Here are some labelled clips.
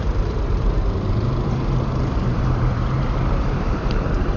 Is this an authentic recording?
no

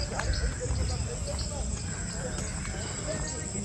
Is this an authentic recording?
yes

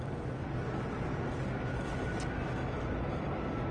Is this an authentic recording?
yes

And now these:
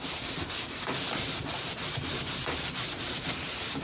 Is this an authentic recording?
no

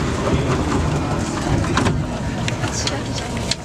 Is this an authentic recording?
yes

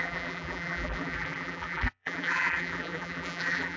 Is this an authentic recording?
no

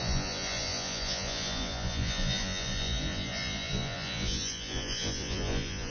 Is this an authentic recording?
no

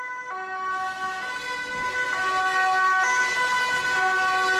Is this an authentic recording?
yes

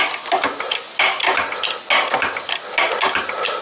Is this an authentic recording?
yes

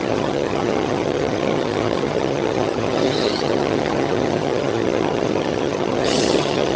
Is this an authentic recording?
no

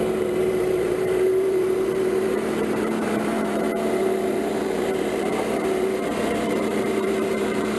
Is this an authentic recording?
no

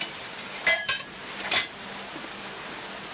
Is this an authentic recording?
yes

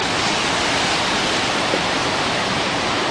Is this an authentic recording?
yes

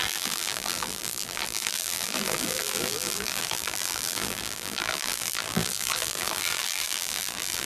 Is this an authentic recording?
no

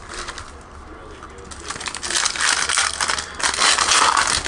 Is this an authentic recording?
yes